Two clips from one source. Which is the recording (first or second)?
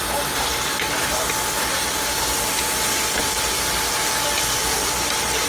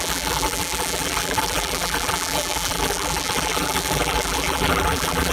first